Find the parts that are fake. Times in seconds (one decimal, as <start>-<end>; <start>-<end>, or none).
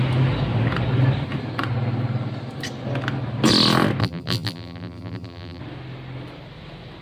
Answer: 4.0-5.6